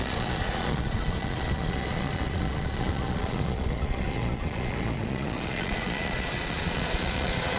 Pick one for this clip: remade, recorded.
remade